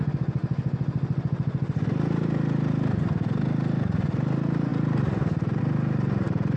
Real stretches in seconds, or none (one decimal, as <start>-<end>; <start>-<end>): 0.0-6.6